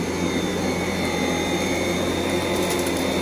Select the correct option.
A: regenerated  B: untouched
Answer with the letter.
B